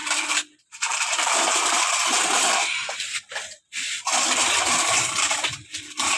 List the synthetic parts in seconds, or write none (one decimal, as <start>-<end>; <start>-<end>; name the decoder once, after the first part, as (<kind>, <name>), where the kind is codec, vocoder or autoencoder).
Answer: 0.6-2.8 (vocoder, BigVGAN v2); 4.7-6.2